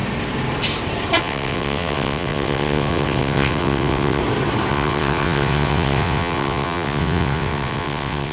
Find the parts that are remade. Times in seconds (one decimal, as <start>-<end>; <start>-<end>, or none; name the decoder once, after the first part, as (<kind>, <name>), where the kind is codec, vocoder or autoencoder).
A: 1.2-4.2 (vocoder, WaveNeXt); 4.7-8.3